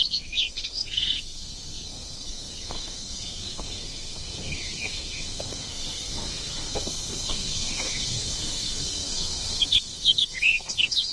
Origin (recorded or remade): remade